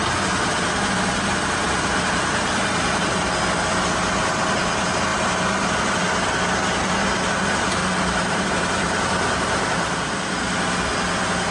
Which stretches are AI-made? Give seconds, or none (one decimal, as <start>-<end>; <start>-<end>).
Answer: 7.8-8.5